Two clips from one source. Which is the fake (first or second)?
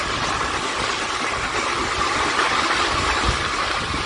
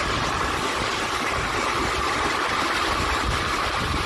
second